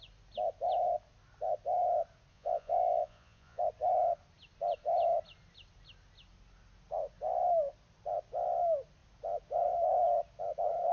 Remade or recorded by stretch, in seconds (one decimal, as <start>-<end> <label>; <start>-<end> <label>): 0.0-2.3 recorded; 2.3-3.6 remade; 3.6-10.9 recorded